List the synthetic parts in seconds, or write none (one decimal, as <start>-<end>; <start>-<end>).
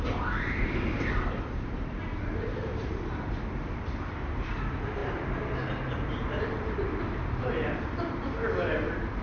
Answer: 5.0-7.8